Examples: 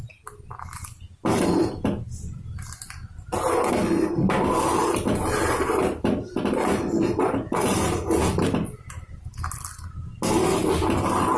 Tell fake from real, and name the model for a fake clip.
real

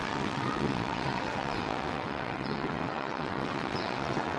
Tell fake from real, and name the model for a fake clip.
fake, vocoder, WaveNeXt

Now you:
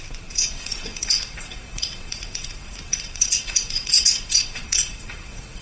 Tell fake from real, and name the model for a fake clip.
fake, vocoder, WaveNeXt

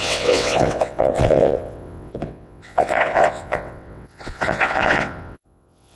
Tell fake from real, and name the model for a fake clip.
fake, vocoder, WaveNeXt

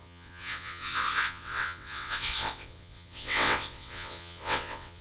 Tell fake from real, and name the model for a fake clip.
fake, vocoder, WaveNeXt